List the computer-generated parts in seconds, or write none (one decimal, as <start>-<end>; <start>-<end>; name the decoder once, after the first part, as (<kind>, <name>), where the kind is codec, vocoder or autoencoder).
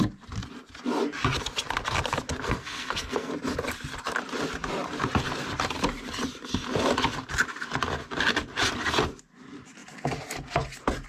2.4-3.3 (codec, SNAC)